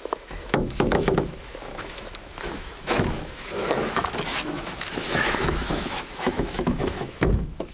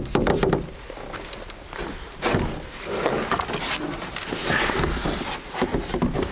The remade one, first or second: first